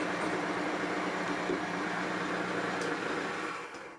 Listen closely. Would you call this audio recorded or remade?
recorded